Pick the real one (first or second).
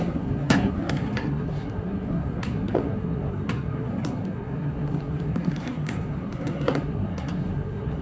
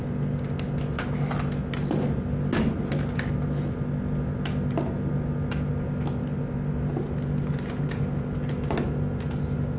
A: second